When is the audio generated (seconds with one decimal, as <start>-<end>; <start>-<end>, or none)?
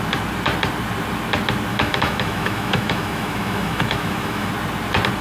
1.7-4.5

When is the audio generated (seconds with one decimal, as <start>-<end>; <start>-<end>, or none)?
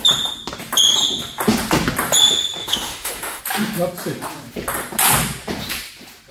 2.6-3.4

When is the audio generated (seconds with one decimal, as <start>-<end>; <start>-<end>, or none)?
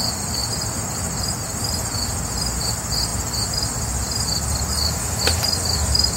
none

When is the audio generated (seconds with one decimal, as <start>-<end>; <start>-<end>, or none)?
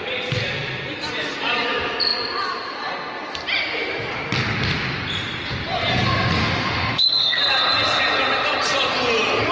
6.4-7.4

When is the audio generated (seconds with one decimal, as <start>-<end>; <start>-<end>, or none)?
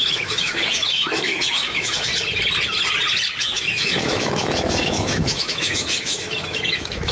0.0-2.1; 3.4-7.1